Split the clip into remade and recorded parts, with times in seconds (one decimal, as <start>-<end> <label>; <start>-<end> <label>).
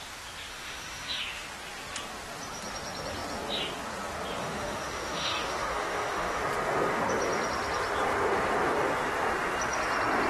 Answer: 0.0-0.5 recorded; 0.5-1.2 remade; 1.2-4.4 recorded; 4.4-6.4 remade; 6.4-10.3 recorded